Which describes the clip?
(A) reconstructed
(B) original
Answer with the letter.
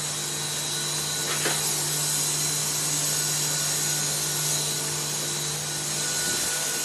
B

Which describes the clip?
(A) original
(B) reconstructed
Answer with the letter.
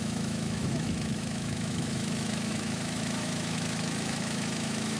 B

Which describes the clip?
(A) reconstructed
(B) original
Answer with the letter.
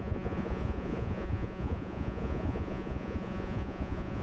A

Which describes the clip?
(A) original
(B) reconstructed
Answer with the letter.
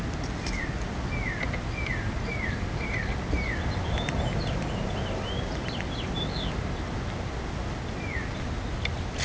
A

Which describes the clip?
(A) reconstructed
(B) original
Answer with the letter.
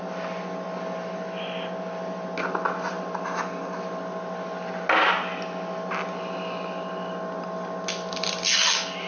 B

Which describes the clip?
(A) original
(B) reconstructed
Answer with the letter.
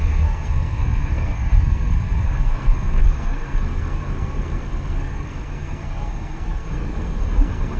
B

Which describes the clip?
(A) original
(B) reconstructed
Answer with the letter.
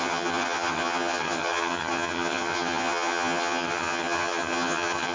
B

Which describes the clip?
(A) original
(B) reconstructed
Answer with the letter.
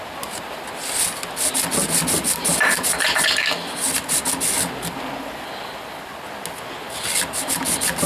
A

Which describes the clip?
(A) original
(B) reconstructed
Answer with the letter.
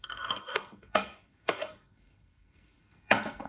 B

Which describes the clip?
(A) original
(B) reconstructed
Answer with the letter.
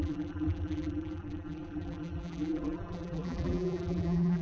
B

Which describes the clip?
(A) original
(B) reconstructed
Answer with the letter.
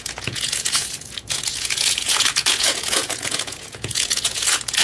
B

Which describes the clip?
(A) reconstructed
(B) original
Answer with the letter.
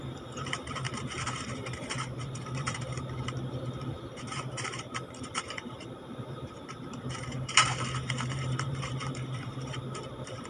A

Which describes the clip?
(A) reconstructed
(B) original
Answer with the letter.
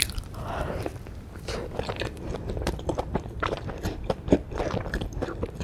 A